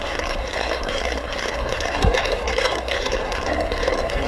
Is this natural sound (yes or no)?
no